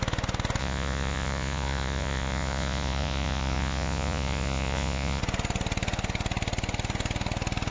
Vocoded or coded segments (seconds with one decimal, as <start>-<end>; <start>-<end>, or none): 0.6-5.2